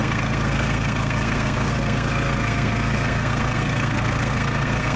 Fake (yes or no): yes